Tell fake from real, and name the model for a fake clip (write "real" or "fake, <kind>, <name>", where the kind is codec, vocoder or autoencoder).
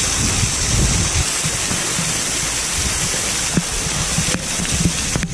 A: real